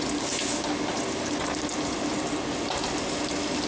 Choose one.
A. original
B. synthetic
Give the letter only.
A